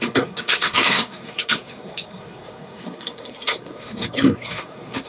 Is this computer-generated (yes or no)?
yes